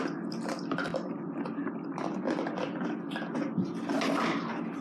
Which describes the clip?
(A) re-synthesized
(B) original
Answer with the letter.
B